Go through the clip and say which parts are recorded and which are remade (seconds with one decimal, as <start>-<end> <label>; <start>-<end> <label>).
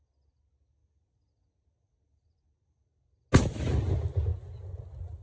0.0-5.2 recorded